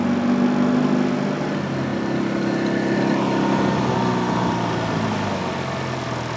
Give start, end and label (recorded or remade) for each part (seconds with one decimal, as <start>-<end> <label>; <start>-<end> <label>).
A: 0.0-6.4 recorded